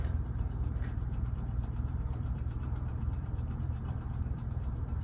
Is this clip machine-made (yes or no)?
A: yes